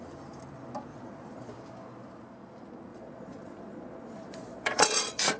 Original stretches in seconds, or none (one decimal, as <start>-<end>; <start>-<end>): 0.0-0.9; 1.5-2.9